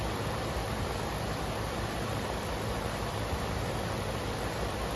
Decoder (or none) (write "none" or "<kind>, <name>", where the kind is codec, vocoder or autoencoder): none